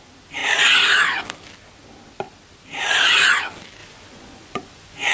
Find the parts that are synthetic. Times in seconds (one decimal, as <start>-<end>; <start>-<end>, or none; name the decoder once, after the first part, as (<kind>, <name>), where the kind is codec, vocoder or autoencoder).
3.8-5.1 (vocoder, Vocos)